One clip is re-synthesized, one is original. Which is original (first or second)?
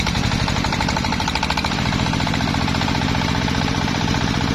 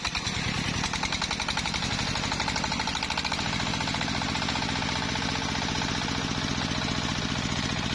second